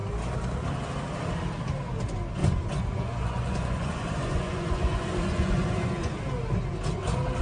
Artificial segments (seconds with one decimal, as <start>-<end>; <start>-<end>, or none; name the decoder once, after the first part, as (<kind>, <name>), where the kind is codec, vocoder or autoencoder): 2.4-6.2 (vocoder, Vocos)